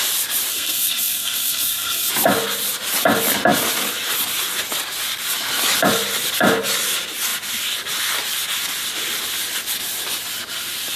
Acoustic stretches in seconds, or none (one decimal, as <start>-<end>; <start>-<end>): 0.0-0.5; 2.1-11.0